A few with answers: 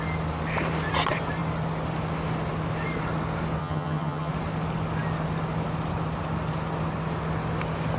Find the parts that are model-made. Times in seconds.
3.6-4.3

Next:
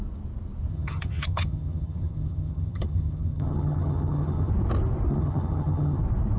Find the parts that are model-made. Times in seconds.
0.7-4.5; 5.1-6.0

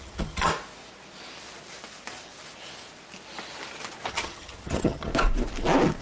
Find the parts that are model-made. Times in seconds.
0.0-0.5; 4.1-5.1

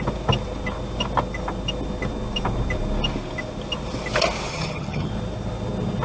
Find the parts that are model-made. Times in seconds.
4.5-5.1

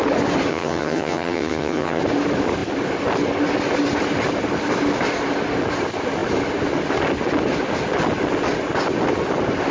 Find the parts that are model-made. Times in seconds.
0.5-2.0